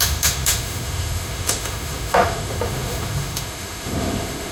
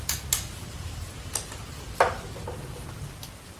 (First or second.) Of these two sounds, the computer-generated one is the first